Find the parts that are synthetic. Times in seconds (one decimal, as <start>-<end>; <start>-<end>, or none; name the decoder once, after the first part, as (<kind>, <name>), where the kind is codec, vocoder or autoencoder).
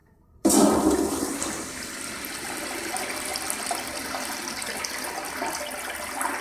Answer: 0.0-2.9 (vocoder, BigVGAN v2)